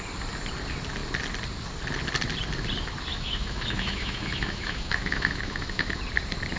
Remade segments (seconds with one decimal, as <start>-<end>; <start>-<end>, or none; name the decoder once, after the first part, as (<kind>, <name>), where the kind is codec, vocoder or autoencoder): 3.1-6.0 (autoencoder, DAC-VAE)